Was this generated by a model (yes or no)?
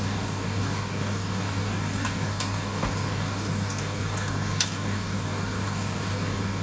yes